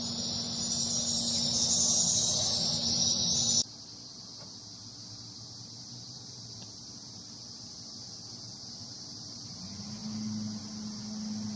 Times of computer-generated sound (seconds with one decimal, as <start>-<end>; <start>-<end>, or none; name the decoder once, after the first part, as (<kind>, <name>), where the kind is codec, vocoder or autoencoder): none

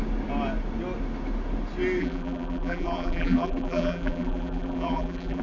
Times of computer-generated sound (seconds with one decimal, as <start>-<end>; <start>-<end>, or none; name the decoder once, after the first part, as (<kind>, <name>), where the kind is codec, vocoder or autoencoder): 2.0-5.4 (vocoder, BigVGAN v2)